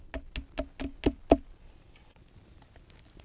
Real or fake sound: real